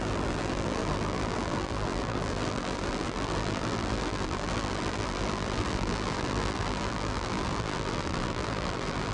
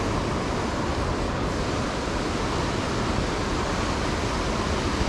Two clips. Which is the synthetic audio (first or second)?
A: first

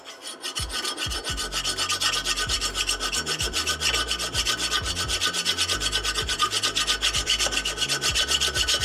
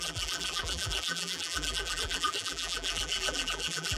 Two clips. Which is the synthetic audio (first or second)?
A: second